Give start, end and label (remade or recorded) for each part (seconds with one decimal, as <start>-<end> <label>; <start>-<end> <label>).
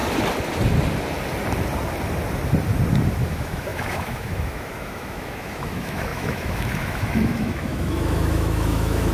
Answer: 0.0-3.1 recorded; 3.1-9.1 remade